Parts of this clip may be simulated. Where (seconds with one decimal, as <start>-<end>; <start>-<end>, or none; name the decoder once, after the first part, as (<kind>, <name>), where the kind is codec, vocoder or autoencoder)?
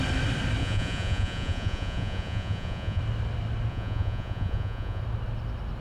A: 0.6-3.0 (vocoder, Vocos); 3.7-5.0